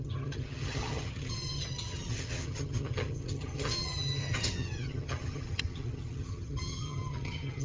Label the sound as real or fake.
fake